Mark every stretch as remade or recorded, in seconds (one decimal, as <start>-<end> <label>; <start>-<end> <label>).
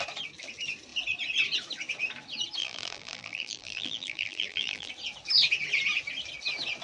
0.0-2.6 recorded; 2.6-4.9 remade; 4.9-6.8 recorded